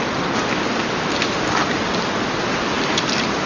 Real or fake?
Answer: real